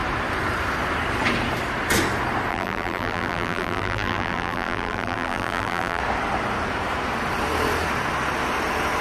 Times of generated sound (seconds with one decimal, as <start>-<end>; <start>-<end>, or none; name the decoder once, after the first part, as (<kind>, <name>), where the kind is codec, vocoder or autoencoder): 2.5-6.0 (vocoder, BigVGAN v2)